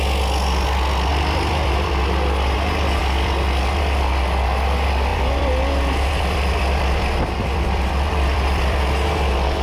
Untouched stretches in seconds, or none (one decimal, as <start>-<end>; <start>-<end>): 0.0-1.1; 1.9-3.0; 3.7-5.1; 8.8-9.6